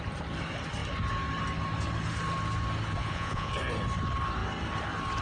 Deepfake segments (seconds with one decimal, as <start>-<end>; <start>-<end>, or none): 3.0-3.5

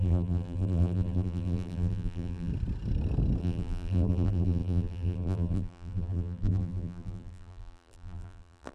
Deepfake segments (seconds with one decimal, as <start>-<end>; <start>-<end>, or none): 0.0-2.5; 3.4-8.7